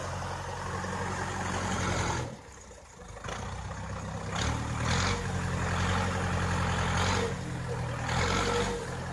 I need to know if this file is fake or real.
real